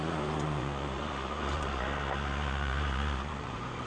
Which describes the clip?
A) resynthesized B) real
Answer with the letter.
A